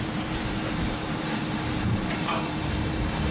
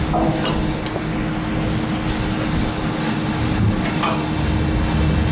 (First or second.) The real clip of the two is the second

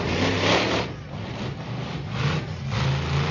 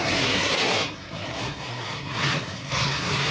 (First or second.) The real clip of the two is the first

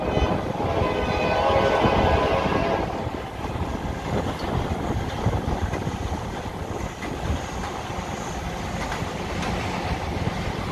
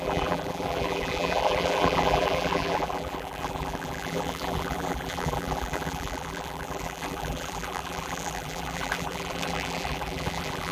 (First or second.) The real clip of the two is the first